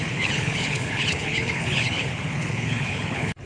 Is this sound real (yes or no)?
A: no